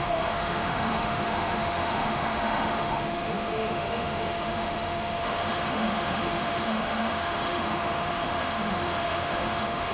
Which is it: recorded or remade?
remade